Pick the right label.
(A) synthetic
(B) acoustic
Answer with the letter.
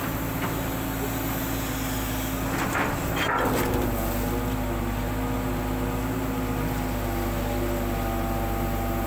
B